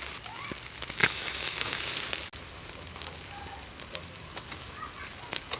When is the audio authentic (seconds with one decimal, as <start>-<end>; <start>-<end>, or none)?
0.0-1.0; 1.8-5.6